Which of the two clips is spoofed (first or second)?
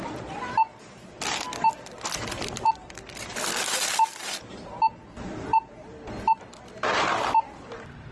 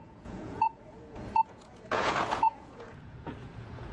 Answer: second